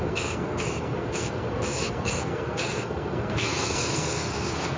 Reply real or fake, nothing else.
fake